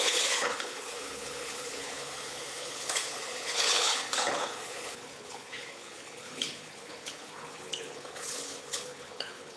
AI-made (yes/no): yes